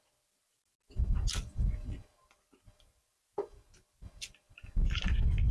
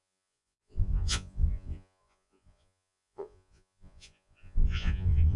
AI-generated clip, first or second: second